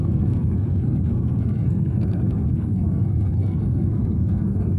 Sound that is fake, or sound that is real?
fake